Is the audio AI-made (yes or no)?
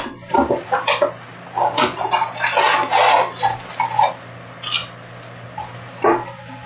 no